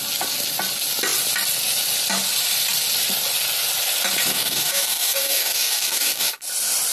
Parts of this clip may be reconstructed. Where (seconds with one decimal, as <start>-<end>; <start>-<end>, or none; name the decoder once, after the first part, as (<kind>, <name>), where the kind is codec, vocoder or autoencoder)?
4.3-6.4 (codec, DAC)